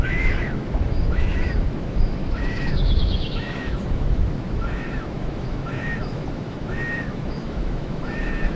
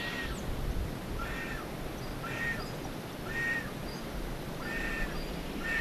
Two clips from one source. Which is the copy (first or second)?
first